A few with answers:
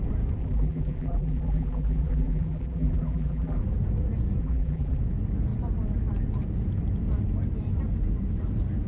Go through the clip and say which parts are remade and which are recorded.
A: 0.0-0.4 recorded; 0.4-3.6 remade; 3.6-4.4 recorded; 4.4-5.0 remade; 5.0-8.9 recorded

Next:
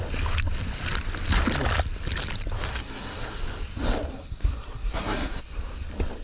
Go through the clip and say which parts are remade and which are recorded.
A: 0.0-2.7 recorded; 2.7-3.4 remade; 3.4-4.1 recorded; 4.1-5.4 remade; 5.4-6.2 recorded